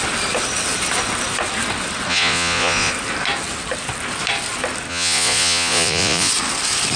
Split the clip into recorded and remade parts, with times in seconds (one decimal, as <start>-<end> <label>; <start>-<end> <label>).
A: 0.0-2.1 recorded; 2.1-2.9 remade; 2.9-4.9 recorded; 4.9-6.3 remade; 6.3-7.0 recorded